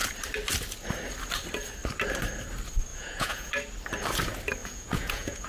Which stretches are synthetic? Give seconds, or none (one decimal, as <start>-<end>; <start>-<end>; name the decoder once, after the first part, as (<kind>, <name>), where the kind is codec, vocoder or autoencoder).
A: 2.9-3.5 (vocoder, Vocos); 4.6-5.5

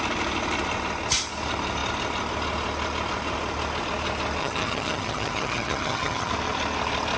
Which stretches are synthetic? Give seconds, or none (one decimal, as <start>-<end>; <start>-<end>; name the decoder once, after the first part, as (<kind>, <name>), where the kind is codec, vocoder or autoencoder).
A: 4.4-6.3 (vocoder, HiFi-GAN)